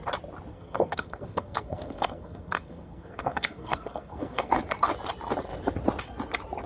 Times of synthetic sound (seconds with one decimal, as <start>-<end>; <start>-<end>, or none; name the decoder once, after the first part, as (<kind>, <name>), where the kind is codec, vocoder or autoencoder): 0.5-4.5 (codec, SNAC)